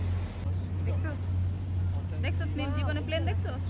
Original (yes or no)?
yes